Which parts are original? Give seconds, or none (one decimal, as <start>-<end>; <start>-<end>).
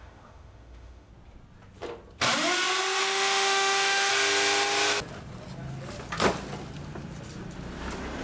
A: 1.1-3.0; 4.1-8.2